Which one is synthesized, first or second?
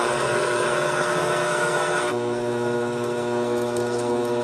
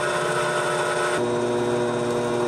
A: first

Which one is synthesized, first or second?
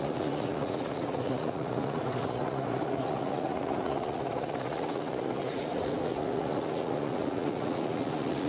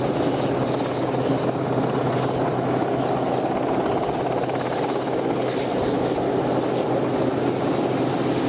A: first